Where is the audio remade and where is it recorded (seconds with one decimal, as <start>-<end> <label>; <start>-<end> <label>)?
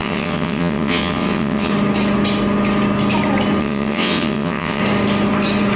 0.0-1.7 remade; 1.7-3.6 recorded; 3.6-4.8 remade; 4.8-5.8 recorded